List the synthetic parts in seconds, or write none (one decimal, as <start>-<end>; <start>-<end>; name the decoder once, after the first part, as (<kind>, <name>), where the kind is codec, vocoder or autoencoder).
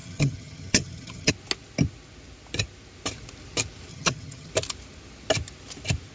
0.0-1.3 (vocoder, HiFi-GAN); 3.9-4.5